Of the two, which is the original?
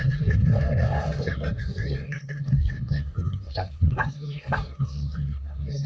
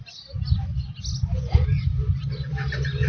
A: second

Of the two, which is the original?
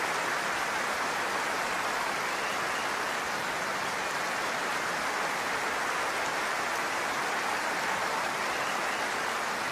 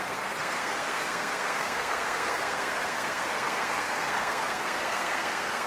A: first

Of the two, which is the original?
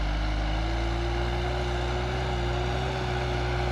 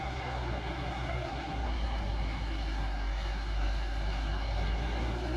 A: first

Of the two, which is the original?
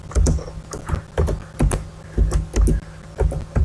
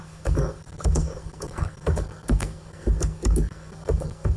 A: first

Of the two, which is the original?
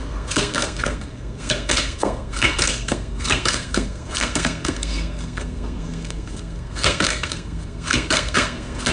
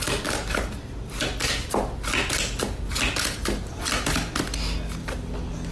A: second